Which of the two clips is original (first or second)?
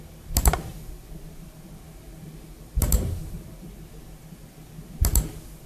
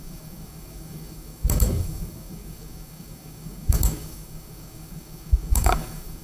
first